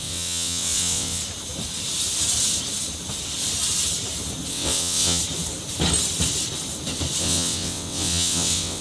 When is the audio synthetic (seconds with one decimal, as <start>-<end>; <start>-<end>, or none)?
0.0-1.2; 4.5-5.2; 7.2-8.8